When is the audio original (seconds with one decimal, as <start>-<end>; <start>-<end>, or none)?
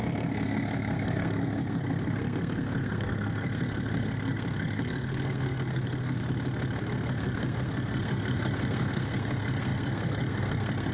6.2-6.8